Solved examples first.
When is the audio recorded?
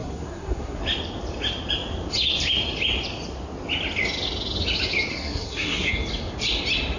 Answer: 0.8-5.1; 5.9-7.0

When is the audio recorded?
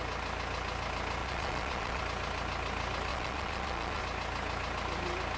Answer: 0.0-1.2; 2.0-3.1; 4.0-5.4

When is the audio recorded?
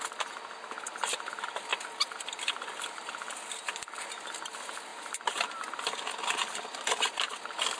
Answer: 0.0-1.7; 2.4-4.9; 6.9-7.8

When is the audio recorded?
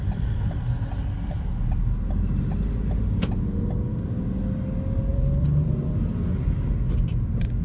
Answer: 0.0-5.1; 6.6-7.6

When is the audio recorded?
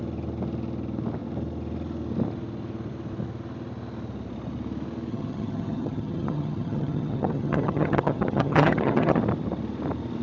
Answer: 0.0-5.1; 9.2-10.2